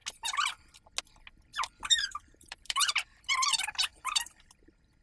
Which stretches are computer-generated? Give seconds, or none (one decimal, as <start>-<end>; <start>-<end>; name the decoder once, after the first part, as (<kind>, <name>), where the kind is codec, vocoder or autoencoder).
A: 1.5-3.3 (vocoder, BigVGAN v2); 3.9-4.4